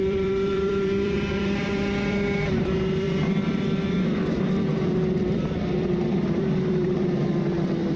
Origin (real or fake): fake